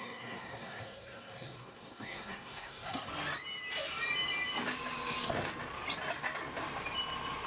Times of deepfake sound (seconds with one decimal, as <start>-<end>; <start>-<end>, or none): 0.0-3.1